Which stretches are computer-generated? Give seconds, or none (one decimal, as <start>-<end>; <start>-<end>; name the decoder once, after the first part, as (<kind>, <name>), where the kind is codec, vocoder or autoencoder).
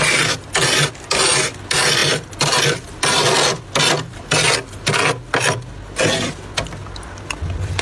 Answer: none